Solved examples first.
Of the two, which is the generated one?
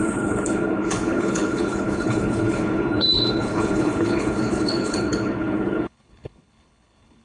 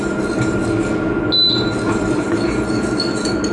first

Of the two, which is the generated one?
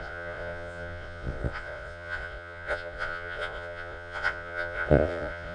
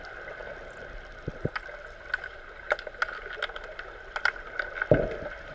first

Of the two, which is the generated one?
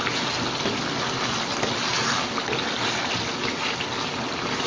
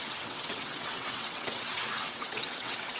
second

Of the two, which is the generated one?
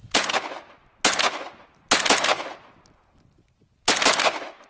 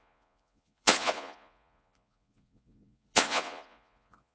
second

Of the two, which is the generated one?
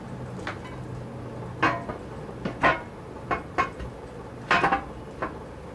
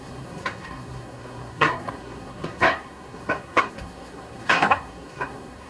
second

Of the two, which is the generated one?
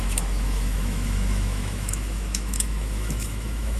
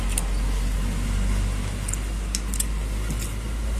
first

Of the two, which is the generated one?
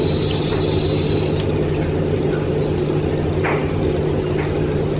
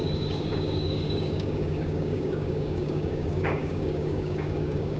second